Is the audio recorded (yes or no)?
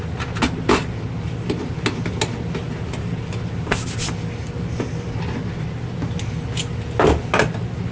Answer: yes